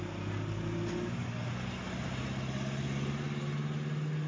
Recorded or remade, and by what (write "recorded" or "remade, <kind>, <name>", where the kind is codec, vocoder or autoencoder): recorded